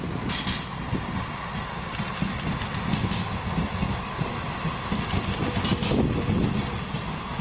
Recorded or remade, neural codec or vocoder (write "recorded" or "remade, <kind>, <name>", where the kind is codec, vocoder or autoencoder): recorded